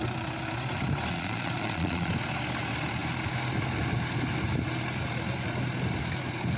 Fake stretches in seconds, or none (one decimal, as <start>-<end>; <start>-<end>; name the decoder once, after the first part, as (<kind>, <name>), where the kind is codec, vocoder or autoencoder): 1.1-2.1 (vocoder, Vocos)